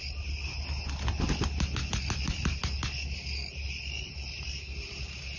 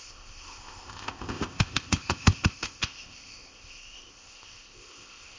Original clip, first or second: first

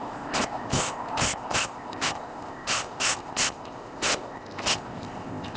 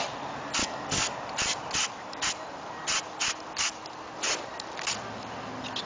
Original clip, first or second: second